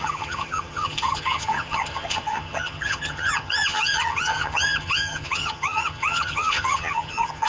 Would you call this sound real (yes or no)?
no